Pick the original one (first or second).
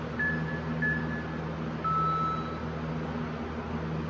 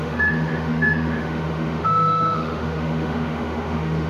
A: first